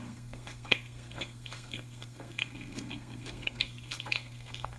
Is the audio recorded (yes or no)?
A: no